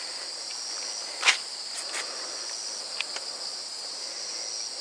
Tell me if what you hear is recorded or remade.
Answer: recorded